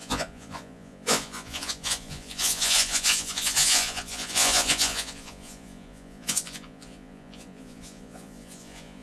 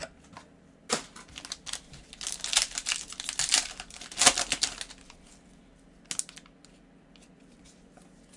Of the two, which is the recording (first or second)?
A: second